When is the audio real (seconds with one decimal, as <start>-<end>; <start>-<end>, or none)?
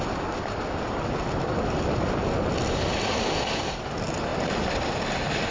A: 0.0-5.5